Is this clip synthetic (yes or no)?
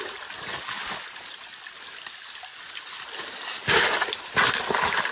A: no